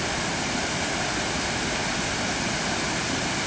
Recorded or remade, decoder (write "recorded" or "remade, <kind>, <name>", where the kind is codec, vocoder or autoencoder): recorded